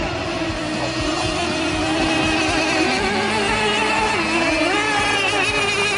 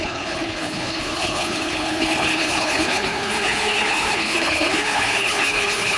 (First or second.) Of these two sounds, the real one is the first